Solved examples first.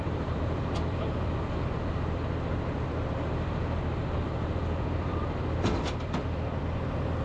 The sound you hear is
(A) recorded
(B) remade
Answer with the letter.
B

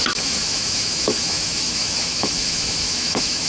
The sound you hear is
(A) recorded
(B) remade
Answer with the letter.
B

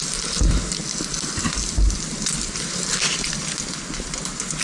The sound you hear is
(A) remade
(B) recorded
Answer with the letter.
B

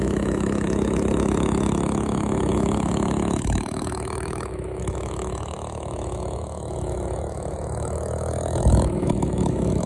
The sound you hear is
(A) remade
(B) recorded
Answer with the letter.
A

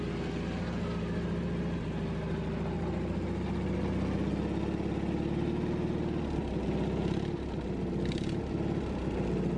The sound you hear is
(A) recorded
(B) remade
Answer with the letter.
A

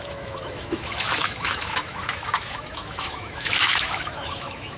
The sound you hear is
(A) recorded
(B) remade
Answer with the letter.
B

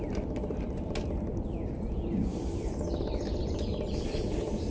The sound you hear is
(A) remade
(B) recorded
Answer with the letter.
A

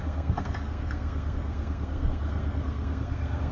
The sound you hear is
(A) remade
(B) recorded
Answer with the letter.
A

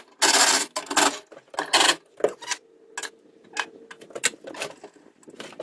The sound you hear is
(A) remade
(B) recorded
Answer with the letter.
B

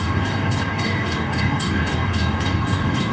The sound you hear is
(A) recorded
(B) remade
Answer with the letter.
B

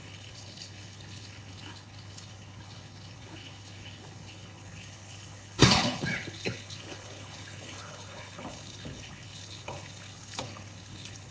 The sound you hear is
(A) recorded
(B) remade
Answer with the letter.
B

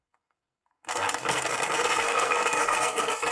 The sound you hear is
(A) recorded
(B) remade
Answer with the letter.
B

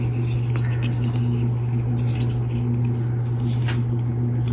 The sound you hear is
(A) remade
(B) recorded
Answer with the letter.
B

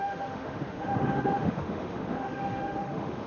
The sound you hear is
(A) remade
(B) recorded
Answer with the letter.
A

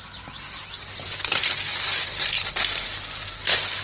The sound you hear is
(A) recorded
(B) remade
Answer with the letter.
A